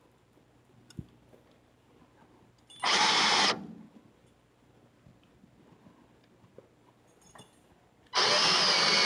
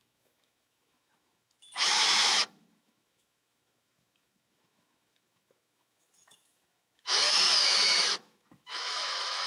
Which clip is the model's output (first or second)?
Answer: second